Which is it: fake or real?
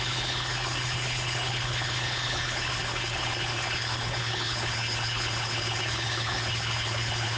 fake